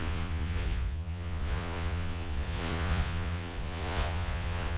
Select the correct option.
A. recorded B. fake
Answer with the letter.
B